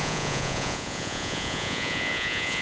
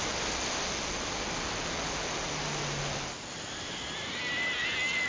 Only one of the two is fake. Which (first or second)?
first